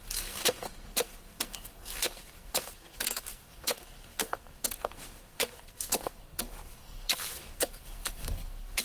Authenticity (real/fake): fake